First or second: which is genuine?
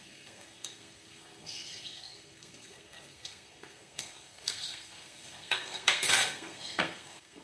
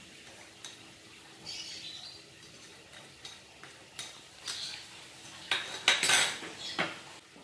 second